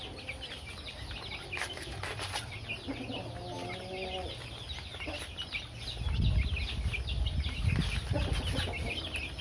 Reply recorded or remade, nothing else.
recorded